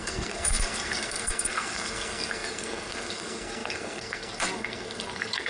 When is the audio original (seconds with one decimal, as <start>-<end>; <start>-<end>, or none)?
none